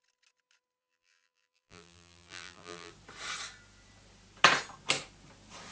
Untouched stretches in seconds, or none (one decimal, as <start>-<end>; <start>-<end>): 0.0-0.8; 2.9-5.7